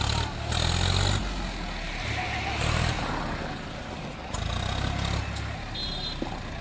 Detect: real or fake real